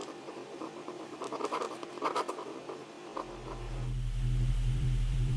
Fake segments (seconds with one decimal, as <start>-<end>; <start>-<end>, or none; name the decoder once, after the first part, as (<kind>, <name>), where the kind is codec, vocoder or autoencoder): 0.0-1.3 (vocoder, BigVGAN v2); 4.5-5.4